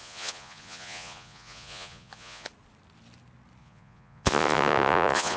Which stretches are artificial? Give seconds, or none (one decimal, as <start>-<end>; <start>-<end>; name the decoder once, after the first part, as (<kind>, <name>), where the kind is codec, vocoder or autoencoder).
0.0-2.5 (vocoder, Vocos); 3.6-5.4